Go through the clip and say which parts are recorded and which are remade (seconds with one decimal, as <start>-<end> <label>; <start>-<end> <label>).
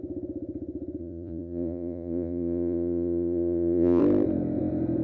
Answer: 0.0-1.0 recorded; 1.0-4.0 remade; 4.0-5.0 recorded